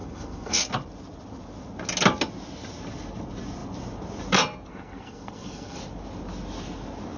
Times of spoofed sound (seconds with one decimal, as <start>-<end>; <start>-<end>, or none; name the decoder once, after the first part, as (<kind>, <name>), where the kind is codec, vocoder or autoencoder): 0.0-0.6 (codec, SNAC); 4.7-5.8